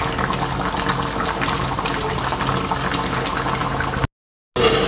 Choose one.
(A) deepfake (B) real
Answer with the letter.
B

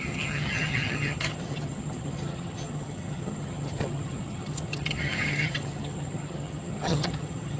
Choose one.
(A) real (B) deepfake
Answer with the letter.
B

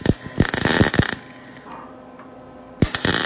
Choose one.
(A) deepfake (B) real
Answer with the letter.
B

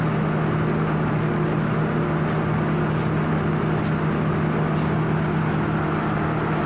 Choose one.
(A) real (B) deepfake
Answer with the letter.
A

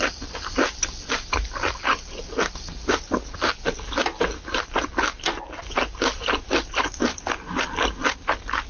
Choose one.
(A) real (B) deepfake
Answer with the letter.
A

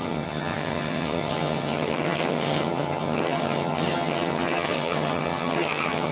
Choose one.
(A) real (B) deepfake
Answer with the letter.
B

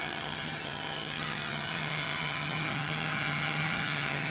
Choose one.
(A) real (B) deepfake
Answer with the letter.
B